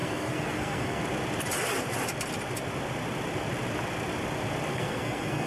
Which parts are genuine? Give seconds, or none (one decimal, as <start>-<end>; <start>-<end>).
1.0-4.7